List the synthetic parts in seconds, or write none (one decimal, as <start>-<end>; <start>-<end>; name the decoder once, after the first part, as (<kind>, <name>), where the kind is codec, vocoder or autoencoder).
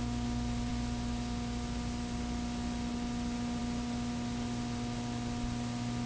none